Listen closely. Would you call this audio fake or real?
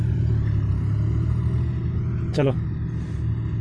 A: real